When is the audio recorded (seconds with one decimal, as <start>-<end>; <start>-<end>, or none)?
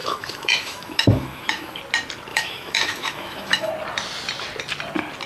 1.8-2.3; 3.7-5.3